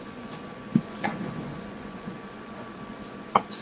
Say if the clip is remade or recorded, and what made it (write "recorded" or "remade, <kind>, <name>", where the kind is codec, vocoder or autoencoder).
remade, vocoder, Vocos